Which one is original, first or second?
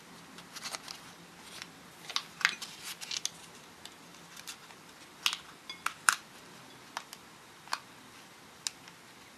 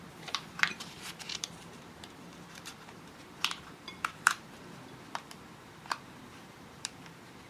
first